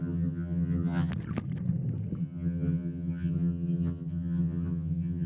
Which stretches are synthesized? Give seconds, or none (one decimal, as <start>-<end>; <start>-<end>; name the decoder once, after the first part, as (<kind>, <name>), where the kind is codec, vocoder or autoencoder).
0.0-1.1 (vocoder, HiFi-GAN); 2.2-5.3